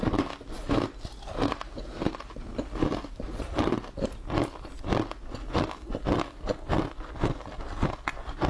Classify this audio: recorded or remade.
recorded